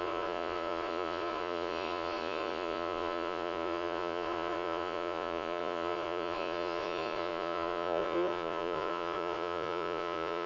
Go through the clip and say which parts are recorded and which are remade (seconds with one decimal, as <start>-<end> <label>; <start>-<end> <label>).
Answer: 0.0-10.5 remade